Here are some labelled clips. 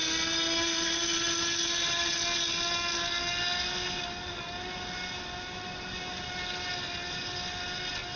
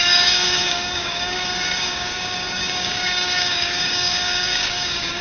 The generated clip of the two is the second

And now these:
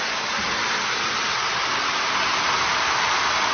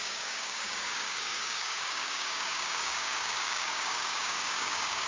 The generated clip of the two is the second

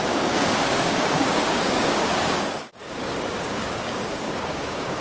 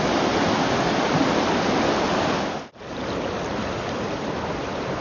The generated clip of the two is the first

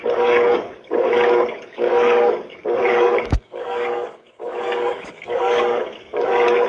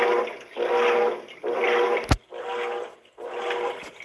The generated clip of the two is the first